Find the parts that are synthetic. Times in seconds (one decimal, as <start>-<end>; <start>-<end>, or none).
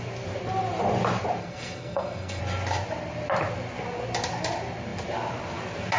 1.4-2.4